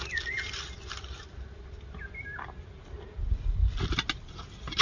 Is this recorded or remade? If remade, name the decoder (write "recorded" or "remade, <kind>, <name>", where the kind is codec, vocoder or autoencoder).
recorded